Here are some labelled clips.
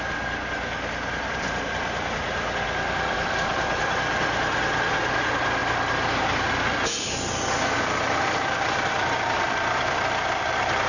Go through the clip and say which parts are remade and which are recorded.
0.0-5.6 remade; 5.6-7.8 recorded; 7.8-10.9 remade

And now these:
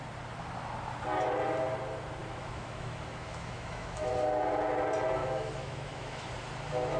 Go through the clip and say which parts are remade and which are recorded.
0.0-2.2 recorded; 2.2-4.1 remade; 4.1-5.2 recorded; 5.2-6.3 remade; 6.3-7.0 recorded

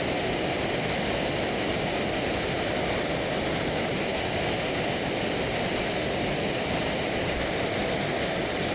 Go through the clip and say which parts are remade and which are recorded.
0.0-4.1 recorded; 4.1-5.1 remade; 5.1-8.7 recorded

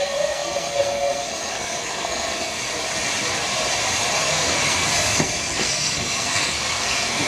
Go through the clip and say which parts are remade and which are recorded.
0.0-2.7 remade; 2.7-4.2 recorded; 4.2-7.3 remade

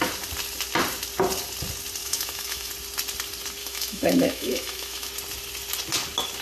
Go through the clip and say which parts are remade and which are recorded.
0.0-2.0 recorded; 2.0-2.7 remade; 2.7-3.6 recorded; 3.6-5.1 remade; 5.1-6.4 recorded